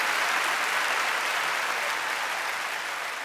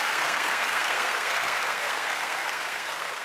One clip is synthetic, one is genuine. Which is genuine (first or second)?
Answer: first